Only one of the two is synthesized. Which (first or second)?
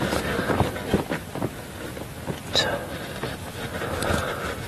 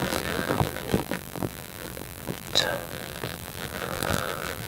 second